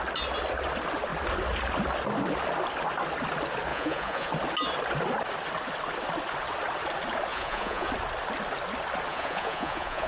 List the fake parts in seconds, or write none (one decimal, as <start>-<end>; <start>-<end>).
3.7-4.3; 7.3-7.9; 9.1-10.1